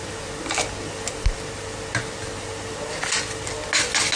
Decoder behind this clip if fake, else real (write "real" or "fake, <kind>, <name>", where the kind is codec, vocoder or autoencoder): real